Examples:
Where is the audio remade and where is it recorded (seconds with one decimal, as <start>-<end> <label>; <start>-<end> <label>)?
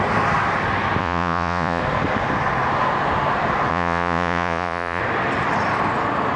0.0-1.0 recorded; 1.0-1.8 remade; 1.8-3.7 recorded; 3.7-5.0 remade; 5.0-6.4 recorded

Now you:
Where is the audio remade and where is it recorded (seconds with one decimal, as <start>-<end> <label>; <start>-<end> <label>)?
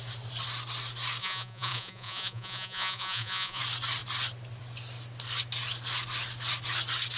0.0-1.2 recorded; 1.2-3.6 remade; 3.6-7.2 recorded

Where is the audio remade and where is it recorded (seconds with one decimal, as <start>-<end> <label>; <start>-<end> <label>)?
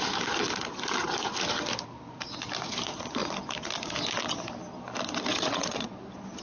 0.0-5.3 recorded; 5.3-5.9 remade; 5.9-6.4 recorded